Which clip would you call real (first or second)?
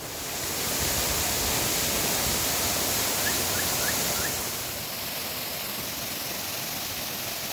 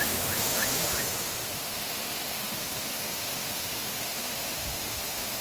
first